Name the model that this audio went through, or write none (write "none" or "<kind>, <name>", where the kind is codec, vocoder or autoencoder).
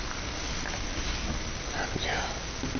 none